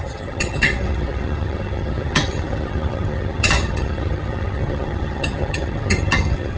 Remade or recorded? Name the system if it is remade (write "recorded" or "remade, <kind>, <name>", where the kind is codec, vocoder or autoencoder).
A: remade, vocoder, HiFi-GAN